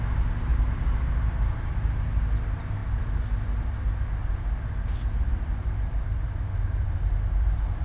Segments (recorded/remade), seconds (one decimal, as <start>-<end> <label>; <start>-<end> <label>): 0.0-0.5 recorded; 0.5-1.7 remade; 1.7-7.8 recorded